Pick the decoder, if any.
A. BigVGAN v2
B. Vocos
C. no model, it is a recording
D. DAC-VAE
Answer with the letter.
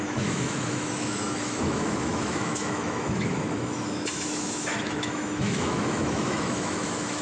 D